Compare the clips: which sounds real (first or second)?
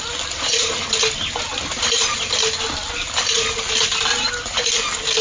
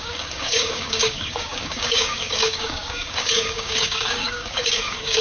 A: first